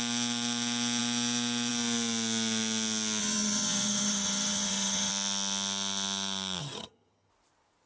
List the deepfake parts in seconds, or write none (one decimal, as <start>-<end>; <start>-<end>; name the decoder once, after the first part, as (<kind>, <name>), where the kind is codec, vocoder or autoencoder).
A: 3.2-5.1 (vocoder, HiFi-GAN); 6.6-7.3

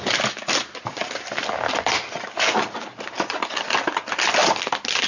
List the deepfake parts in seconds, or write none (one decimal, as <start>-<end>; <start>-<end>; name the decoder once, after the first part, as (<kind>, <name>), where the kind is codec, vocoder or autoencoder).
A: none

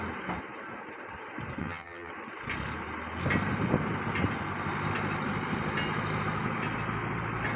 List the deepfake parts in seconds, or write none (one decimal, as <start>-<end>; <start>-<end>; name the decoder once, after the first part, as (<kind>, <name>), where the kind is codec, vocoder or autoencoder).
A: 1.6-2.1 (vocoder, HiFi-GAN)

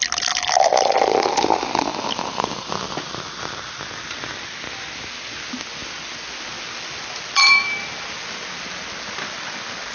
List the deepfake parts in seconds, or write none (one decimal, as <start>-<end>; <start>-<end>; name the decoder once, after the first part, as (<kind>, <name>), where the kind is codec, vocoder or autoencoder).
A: none

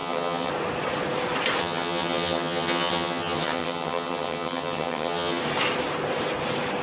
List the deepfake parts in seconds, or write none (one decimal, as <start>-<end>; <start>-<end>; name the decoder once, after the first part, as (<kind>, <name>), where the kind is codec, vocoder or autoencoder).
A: 0.0-0.5 (vocoder, HiFi-GAN); 1.6-5.4

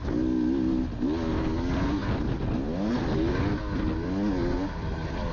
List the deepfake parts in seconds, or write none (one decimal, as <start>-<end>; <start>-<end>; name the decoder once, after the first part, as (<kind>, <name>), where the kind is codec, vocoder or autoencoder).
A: none